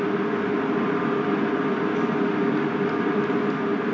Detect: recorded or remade recorded